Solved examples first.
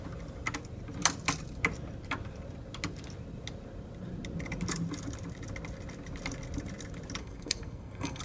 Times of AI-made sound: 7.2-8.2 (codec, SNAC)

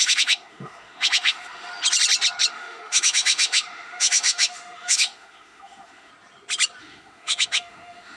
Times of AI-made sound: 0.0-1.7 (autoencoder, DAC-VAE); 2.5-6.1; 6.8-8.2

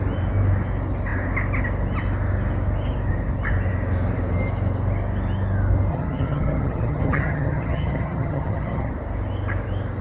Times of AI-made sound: 5.9-8.9 (vocoder, HiFi-GAN)

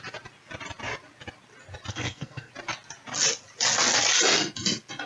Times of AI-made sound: 1.9-2.5 (codec, SNAC)

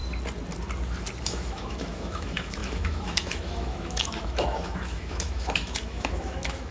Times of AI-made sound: 1.2-6.7 (autoencoder, DAC-VAE)

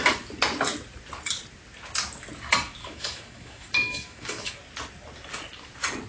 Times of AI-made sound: 2.8-4.5 (autoencoder, DAC-VAE)